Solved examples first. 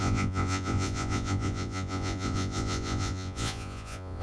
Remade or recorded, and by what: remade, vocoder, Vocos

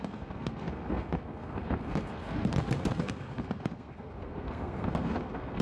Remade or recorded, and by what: remade, codec, SNAC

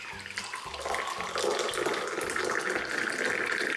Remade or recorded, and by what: recorded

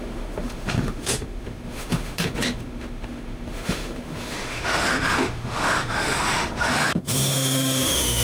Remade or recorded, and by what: remade, autoencoder, DAC-VAE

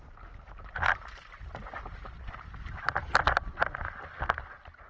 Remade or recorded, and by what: recorded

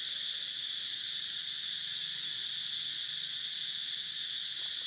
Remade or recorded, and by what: recorded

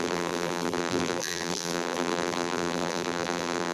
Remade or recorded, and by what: remade, vocoder, BigVGAN v2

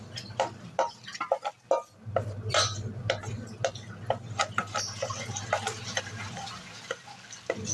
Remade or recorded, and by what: recorded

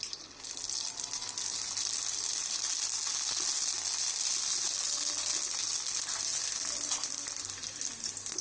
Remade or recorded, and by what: recorded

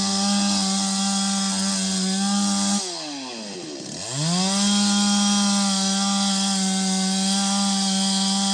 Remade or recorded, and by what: recorded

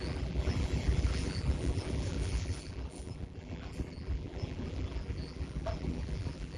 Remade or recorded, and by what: remade, vocoder, BigVGAN v2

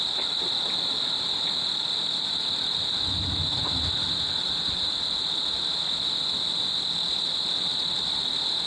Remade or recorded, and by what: recorded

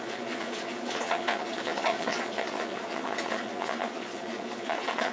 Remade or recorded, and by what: remade, vocoder, Vocos